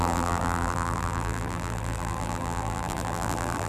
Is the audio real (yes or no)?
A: no